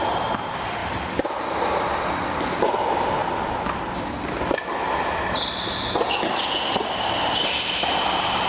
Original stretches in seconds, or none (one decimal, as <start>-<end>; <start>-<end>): 0.0-8.5